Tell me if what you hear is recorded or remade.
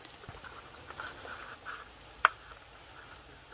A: recorded